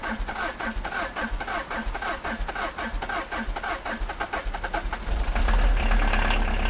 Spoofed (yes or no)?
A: no